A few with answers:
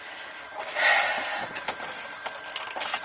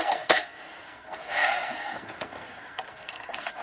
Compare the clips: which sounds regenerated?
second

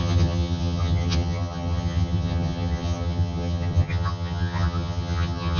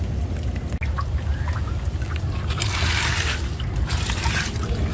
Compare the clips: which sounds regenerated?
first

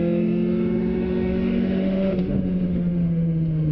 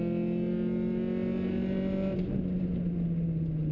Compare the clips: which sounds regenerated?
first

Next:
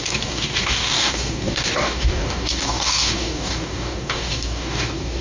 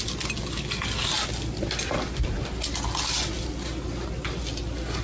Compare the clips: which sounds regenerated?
first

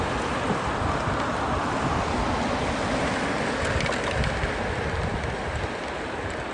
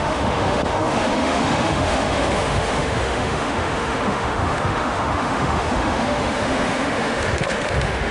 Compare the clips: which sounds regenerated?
second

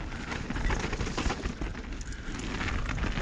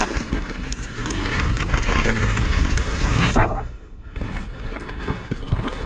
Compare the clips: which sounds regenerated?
second